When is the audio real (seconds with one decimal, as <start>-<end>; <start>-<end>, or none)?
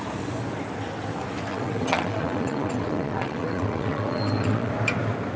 0.0-1.5; 4.7-5.4